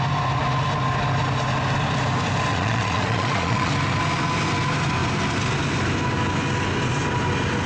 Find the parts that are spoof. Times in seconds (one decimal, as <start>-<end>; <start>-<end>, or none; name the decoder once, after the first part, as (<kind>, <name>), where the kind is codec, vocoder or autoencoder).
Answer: 2.5-3.7 (vocoder, Vocos)

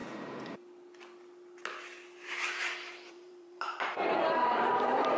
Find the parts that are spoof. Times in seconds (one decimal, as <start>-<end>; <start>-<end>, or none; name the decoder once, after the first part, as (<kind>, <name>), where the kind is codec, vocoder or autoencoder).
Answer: 3.1-5.2 (vocoder, BigVGAN v2)

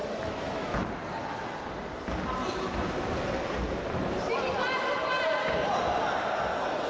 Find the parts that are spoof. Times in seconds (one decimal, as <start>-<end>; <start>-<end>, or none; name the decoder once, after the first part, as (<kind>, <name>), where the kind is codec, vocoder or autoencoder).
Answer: 0.0-0.8 (autoencoder, DAC-VAE)